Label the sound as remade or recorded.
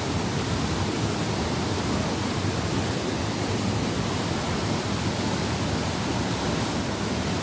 recorded